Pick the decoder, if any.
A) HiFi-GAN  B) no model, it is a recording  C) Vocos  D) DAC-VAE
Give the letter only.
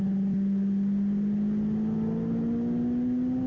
B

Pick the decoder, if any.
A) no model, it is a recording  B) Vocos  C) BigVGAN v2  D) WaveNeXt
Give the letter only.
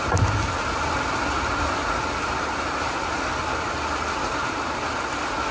A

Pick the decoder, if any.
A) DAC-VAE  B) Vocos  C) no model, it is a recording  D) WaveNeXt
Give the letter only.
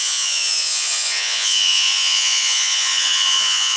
B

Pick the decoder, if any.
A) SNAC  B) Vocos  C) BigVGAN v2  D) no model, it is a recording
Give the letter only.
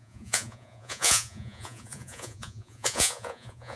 B